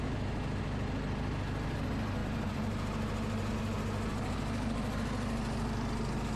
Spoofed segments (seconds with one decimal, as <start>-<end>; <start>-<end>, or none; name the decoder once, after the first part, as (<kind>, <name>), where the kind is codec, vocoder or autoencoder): 2.2-3.5 (vocoder, BigVGAN v2)